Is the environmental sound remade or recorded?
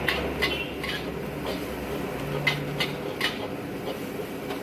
recorded